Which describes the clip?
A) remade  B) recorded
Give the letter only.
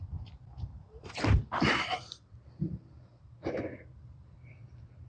A